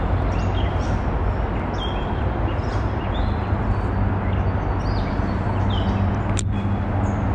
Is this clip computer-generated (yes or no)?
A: no